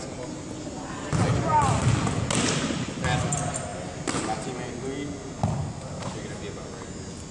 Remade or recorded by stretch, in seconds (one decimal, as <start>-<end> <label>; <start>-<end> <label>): 0.0-7.3 recorded